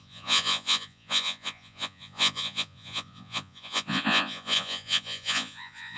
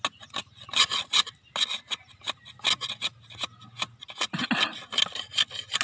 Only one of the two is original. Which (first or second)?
second